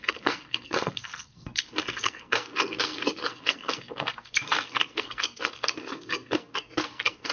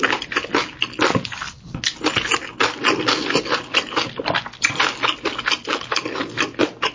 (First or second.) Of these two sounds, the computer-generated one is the first